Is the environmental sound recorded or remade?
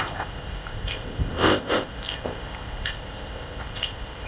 remade